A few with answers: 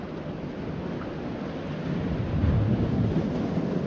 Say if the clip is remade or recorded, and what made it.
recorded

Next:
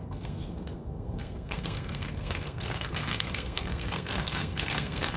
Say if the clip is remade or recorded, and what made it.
remade, codec, SNAC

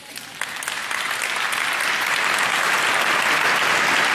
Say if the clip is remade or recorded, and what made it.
recorded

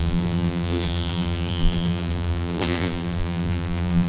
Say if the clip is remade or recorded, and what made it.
remade, vocoder, BigVGAN v2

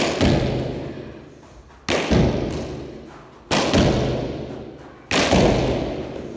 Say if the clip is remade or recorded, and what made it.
recorded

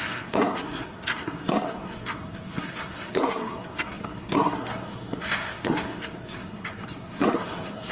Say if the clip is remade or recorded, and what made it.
remade, codec, SNAC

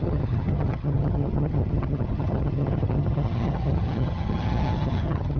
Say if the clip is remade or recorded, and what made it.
remade, vocoder, HiFi-GAN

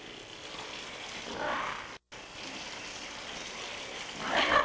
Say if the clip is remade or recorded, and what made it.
recorded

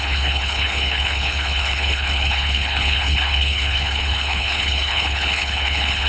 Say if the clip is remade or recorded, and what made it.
remade, codec, HILCodec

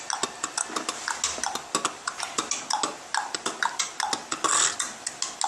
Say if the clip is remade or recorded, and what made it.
recorded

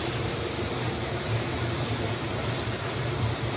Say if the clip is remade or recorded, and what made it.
remade, vocoder, BigVGAN v2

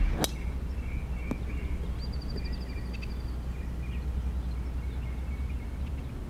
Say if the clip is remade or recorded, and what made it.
recorded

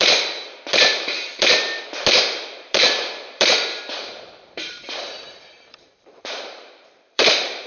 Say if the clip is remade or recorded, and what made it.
remade, vocoder, BigVGAN v2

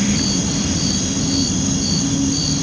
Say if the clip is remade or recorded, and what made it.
recorded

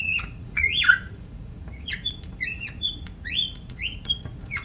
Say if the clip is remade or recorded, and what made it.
remade, vocoder, Vocos